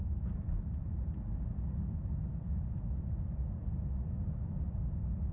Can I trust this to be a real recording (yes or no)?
yes